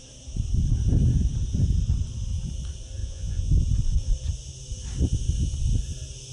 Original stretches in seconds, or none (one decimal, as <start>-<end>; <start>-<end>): 0.0-3.0; 3.5-6.3